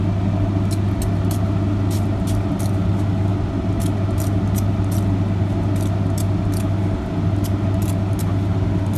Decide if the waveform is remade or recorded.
recorded